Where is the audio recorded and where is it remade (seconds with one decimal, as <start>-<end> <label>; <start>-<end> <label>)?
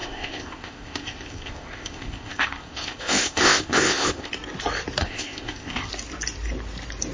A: 0.0-4.3 remade; 4.3-5.0 recorded; 5.0-5.9 remade; 5.9-7.1 recorded